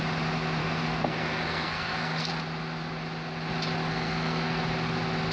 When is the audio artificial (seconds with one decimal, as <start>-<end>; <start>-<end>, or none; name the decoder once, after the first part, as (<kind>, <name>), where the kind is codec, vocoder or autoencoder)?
0.6-2.3 (codec, SNAC); 3.9-4.6